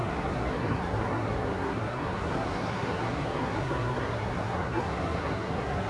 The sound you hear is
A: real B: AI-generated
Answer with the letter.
B